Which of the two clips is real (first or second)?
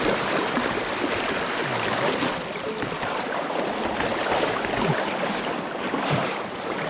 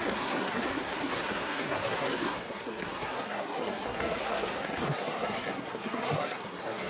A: first